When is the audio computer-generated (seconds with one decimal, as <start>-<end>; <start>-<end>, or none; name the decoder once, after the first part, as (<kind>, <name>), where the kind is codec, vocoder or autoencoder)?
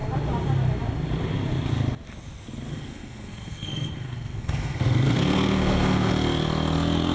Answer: 2.7-6.1 (codec, SNAC)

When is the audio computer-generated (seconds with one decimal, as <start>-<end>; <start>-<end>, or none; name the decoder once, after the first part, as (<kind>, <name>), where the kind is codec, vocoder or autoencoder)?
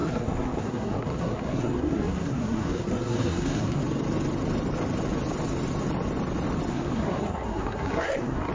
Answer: 0.0-3.8 (codec, SNAC); 6.7-8.5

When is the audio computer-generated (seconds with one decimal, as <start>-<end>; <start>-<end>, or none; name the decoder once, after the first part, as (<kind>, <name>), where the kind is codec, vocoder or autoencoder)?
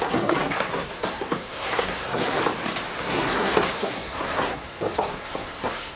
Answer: 0.0-2.4 (codec, SNAC); 3.0-6.0